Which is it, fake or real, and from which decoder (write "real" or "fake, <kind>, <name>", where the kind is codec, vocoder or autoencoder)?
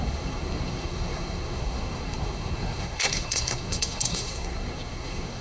fake, codec, SNAC